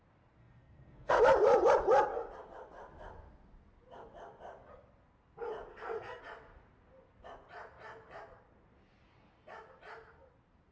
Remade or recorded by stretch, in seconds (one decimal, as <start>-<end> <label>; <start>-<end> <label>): 0.0-0.4 recorded; 0.4-1.2 remade; 1.2-5.7 recorded; 5.7-6.2 remade; 6.2-10.7 recorded

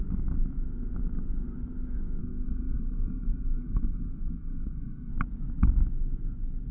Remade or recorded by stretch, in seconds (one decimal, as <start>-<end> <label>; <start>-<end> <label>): 0.0-2.2 recorded; 2.2-5.1 remade; 5.1-6.7 recorded

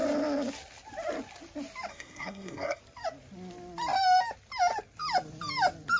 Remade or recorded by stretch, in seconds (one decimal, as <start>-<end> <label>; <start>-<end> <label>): 0.0-1.9 recorded; 1.9-2.8 remade; 2.8-6.0 recorded